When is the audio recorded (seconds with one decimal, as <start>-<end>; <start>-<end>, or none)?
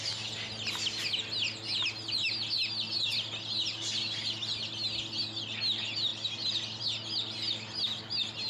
0.0-8.5